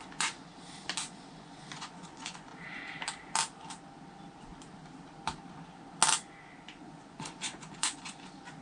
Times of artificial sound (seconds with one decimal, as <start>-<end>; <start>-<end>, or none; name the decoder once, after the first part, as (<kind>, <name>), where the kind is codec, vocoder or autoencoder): 0.0-0.5 (vocoder, Vocos); 1.0-2.5; 6.6-8.6